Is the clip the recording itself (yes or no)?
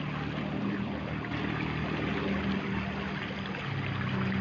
yes